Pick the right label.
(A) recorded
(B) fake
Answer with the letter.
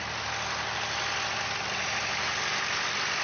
A